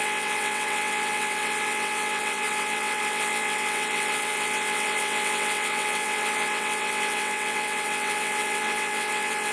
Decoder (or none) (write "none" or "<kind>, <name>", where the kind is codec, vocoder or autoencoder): vocoder, WaveNeXt